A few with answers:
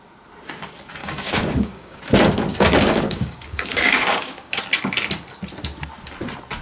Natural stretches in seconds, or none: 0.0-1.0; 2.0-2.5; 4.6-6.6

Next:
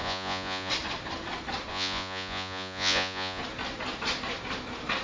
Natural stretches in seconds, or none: 0.7-1.7; 3.4-5.0

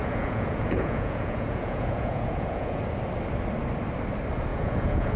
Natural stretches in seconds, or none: 2.8-4.5

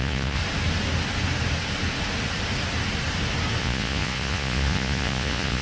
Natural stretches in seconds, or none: 0.4-3.6